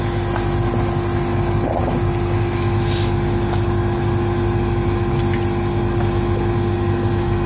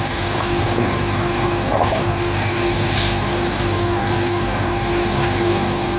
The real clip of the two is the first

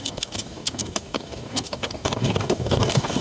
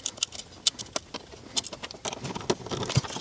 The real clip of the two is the second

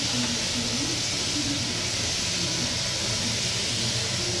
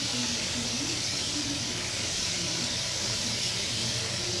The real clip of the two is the first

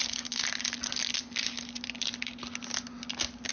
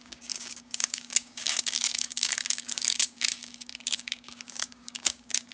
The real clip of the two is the first